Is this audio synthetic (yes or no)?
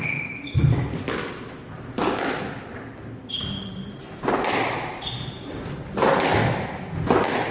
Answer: no